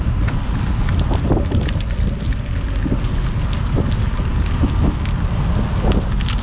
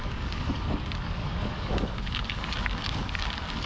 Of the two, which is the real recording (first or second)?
first